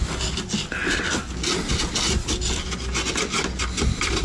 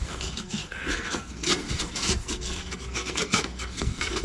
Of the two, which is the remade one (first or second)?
second